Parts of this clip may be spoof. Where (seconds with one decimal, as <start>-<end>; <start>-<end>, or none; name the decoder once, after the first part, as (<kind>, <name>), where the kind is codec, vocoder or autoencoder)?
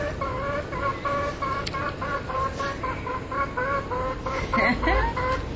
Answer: none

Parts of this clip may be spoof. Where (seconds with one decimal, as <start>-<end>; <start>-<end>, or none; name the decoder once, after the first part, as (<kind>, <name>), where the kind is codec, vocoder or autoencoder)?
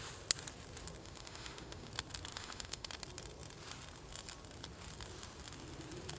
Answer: 1.0-1.9 (autoencoder, DAC-VAE); 2.3-2.9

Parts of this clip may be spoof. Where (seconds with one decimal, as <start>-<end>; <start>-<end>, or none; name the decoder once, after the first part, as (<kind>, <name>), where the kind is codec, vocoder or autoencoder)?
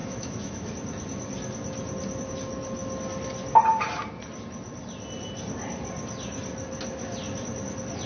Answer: 0.0-0.7 (autoencoder, DAC-VAE)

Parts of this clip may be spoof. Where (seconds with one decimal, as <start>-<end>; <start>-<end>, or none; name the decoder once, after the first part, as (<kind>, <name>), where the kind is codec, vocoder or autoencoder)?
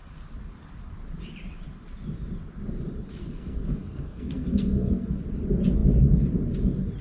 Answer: 3.2-5.2 (codec, SNAC)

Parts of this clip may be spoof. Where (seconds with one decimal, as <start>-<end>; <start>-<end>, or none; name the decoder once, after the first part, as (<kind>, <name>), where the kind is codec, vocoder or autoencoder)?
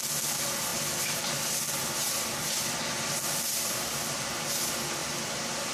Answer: none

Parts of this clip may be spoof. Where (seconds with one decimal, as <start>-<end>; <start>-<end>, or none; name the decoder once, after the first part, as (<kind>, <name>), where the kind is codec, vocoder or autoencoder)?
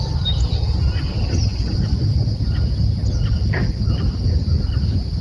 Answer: none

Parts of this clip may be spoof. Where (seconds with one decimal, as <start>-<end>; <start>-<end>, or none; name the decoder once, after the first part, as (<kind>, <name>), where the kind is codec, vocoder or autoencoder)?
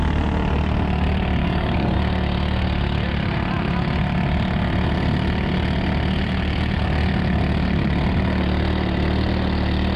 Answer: 1.4-2.0 (codec, DAC)